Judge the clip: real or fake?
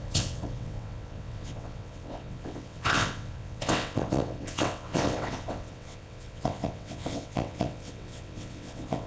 fake